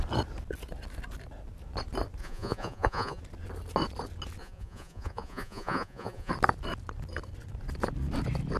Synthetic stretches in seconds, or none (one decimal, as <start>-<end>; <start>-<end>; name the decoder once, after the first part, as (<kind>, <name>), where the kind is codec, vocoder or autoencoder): 2.2-3.2 (vocoder, Vocos); 4.4-6.3